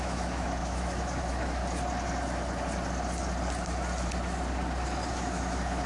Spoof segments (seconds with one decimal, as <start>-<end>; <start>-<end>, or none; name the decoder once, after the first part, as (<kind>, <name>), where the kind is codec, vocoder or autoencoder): 0.0-1.6 (autoencoder, DAC-VAE); 5.1-5.9